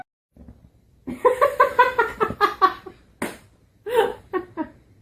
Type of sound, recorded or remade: recorded